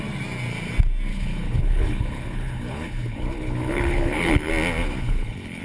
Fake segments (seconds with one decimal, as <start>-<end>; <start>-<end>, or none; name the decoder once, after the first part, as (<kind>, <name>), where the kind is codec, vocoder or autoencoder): 1.1-4.5 (codec, HILCodec); 5.0-5.6

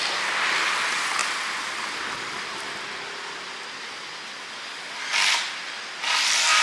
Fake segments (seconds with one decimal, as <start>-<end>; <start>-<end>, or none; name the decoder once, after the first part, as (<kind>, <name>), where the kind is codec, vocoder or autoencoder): none

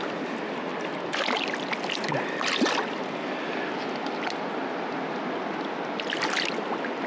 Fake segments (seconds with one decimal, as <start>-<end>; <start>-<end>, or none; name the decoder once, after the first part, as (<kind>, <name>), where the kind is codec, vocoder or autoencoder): none

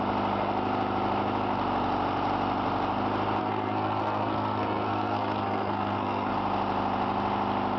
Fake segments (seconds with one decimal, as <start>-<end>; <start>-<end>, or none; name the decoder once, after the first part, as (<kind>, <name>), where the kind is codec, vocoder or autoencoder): 3.4-6.3 (codec, SNAC)

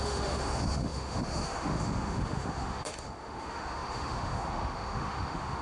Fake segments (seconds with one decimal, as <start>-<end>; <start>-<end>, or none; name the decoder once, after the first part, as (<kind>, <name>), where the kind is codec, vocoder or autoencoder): 0.0-5.6 (autoencoder, DAC-VAE)